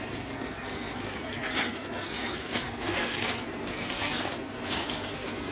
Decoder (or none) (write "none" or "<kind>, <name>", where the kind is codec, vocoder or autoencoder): codec, SNAC